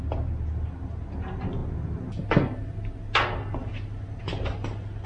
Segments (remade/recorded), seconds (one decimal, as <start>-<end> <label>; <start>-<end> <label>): 0.0-5.1 recorded